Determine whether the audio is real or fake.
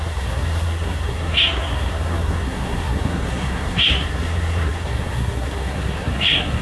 fake